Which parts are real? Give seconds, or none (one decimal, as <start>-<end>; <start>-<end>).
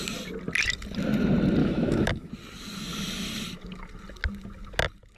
0.0-1.6; 2.3-5.2